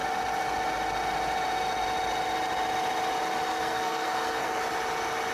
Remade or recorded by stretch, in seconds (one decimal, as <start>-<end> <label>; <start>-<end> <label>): 0.0-3.5 recorded; 3.5-4.6 remade; 4.6-5.3 recorded